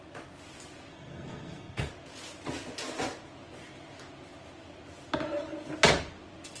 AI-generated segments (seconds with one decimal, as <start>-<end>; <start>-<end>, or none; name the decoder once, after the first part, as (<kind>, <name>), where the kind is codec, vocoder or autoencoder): 0.9-1.9 (codec, SNAC)